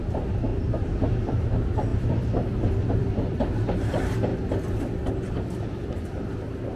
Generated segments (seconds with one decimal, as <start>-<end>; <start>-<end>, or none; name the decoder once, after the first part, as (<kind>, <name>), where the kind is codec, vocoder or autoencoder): 0.5-1.4 (vocoder, BigVGAN v2); 1.9-3.4; 4.3-6.3